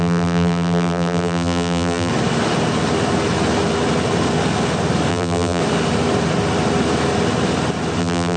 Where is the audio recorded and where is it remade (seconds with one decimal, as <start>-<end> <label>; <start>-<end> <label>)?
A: 0.0-2.1 remade; 2.1-5.1 recorded; 5.1-5.6 remade; 5.6-8.0 recorded; 8.0-8.4 remade

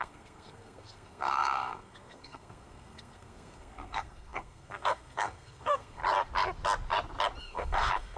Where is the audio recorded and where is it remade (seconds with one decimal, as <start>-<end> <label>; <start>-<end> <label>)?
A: 0.0-6.0 remade; 6.0-7.4 recorded; 7.4-8.2 remade

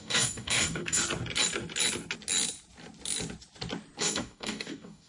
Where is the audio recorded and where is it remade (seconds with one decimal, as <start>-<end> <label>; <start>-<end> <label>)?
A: 0.0-1.0 remade; 1.0-4.0 recorded; 4.0-5.1 remade

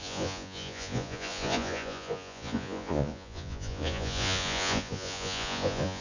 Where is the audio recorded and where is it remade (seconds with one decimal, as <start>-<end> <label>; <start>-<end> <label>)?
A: 0.0-6.0 remade

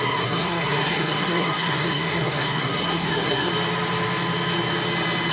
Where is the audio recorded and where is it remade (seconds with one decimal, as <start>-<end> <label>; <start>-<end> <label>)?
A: 0.0-3.5 remade; 3.5-5.3 recorded